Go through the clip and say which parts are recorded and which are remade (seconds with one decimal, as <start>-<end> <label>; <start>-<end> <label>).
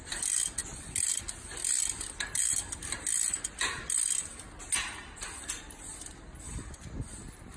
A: 0.0-7.6 recorded